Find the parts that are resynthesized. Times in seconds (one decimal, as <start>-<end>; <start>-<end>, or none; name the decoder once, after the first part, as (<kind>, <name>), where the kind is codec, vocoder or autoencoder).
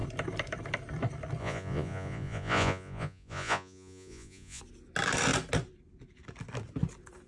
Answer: 1.4-4.6 (vocoder, Vocos)